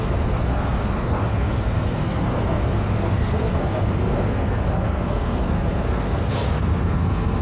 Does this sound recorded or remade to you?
remade